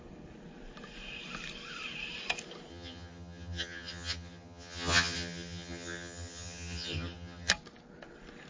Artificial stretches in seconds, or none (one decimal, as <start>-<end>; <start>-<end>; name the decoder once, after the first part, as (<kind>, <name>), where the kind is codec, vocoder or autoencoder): 2.7-7.5 (vocoder, HiFi-GAN)